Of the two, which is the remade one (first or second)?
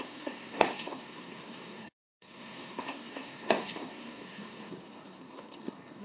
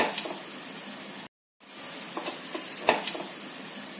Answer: first